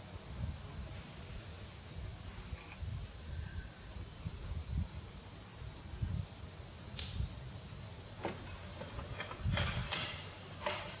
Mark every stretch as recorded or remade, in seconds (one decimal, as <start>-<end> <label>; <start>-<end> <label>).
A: 0.0-3.0 recorded; 3.0-3.7 remade; 3.7-8.7 recorded; 8.7-11.0 remade